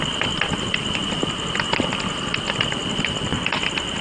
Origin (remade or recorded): recorded